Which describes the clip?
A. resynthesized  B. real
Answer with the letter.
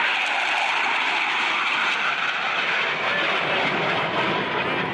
B